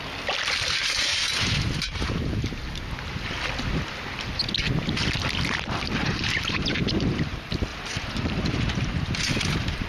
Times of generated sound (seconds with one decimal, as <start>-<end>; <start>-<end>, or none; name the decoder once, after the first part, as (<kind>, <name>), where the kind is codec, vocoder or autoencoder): 1.1-2.6 (vocoder, BigVGAN v2); 6.0-7.3; 7.7-9.9